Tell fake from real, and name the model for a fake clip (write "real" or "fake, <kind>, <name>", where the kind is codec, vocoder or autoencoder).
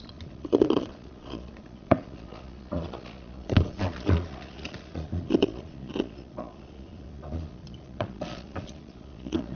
fake, vocoder, Vocos